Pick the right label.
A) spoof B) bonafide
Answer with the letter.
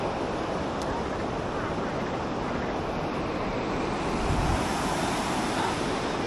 B